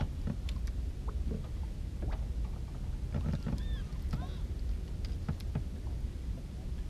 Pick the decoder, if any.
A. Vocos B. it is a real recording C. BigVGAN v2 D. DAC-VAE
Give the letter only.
B